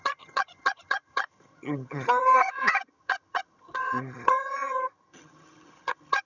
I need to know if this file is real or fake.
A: fake